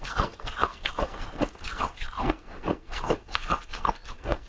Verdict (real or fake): fake